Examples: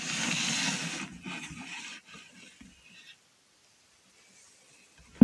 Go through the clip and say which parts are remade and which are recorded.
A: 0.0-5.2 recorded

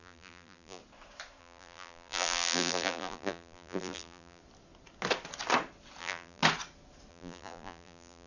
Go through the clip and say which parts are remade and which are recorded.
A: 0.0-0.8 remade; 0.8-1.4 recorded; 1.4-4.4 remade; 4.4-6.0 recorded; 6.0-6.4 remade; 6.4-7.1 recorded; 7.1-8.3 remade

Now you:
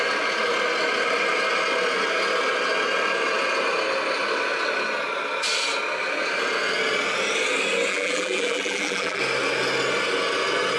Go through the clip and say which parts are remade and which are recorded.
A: 0.0-7.9 recorded; 7.9-9.2 remade; 9.2-10.8 recorded

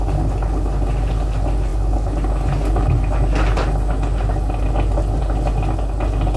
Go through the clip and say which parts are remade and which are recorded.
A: 0.0-6.4 recorded